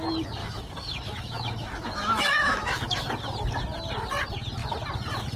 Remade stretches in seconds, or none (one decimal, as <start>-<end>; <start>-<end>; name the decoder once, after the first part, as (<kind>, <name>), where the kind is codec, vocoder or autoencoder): 0.4-3.1 (autoencoder, DAC-VAE)